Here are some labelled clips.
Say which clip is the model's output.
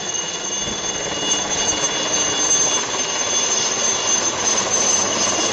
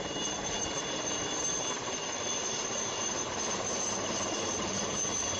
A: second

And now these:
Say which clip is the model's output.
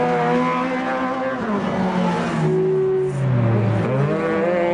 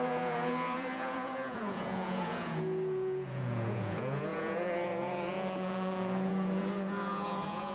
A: second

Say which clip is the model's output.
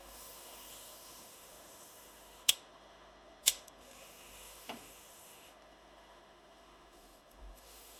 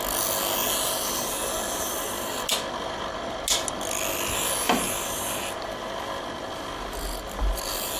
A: first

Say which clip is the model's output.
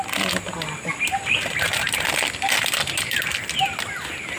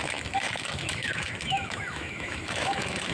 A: second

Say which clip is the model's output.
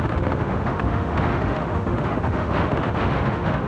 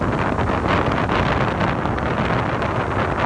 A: first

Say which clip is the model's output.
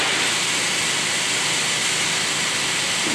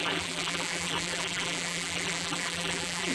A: second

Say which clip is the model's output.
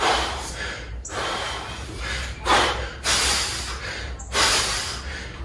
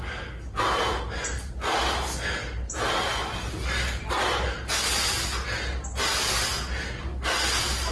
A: first